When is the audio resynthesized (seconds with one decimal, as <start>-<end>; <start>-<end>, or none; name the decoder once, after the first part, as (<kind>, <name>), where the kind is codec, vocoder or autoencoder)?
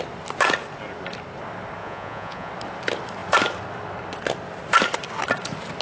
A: 1.8-2.5 (vocoder, Vocos)